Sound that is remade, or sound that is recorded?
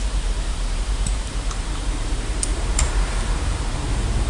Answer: remade